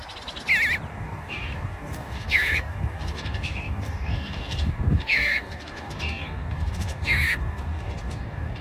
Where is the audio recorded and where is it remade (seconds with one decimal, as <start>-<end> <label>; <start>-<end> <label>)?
0.0-0.9 recorded; 0.9-8.6 remade